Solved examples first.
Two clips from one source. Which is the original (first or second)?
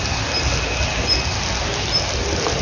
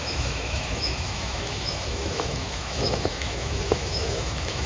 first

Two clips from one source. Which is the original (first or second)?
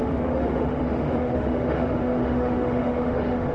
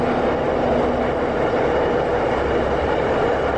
second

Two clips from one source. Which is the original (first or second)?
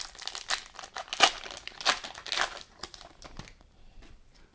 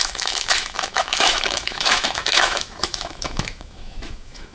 first